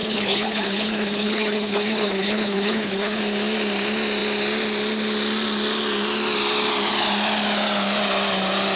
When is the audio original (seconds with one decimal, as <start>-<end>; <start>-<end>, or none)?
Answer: 3.2-8.8